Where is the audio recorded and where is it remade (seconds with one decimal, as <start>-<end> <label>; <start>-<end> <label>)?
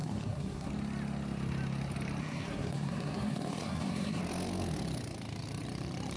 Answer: 0.0-0.7 remade; 0.7-2.2 recorded; 2.2-4.2 remade; 4.2-6.2 recorded